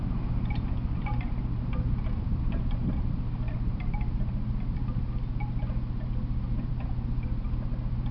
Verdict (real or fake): real